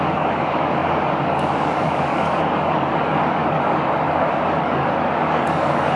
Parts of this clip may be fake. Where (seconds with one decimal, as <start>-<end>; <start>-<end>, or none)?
0.0-6.0